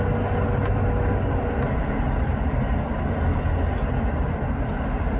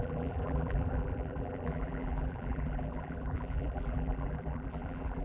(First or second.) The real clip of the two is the first